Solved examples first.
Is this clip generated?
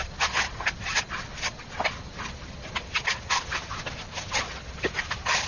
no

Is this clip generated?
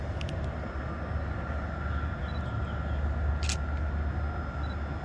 no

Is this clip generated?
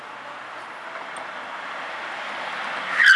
no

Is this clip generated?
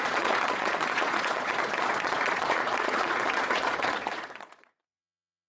yes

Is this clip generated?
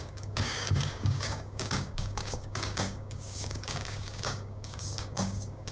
yes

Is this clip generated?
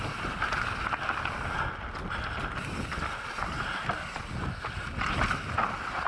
no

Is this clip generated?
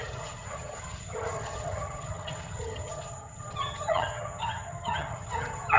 yes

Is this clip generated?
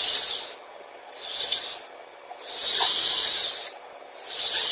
no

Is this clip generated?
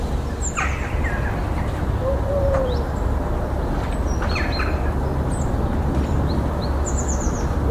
no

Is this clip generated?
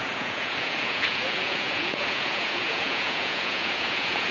yes